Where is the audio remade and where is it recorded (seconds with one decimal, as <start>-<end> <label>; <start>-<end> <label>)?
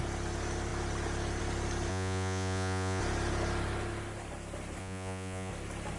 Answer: 0.0-1.9 recorded; 1.9-3.0 remade; 3.0-4.8 recorded; 4.8-5.5 remade; 5.5-6.0 recorded